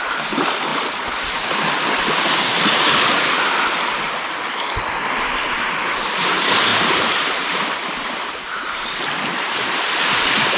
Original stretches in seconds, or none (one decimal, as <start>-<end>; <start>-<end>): 0.0-6.7; 8.9-10.6